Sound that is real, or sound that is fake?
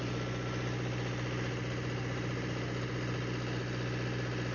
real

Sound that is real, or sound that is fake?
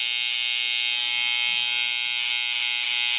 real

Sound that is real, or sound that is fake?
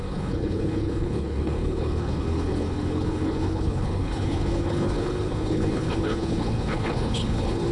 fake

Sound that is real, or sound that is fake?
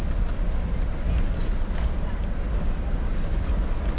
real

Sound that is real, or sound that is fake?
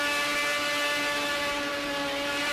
real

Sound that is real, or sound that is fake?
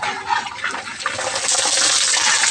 real